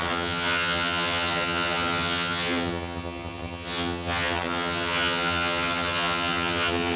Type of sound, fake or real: fake